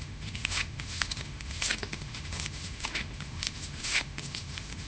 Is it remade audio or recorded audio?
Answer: remade